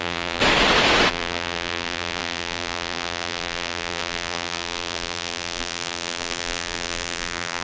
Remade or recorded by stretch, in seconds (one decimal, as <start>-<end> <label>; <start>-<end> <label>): 0.0-0.4 remade; 0.4-1.1 recorded; 1.1-7.6 remade